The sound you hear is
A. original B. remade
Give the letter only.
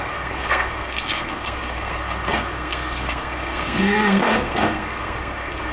B